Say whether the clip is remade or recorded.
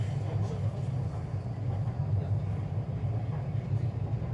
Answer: recorded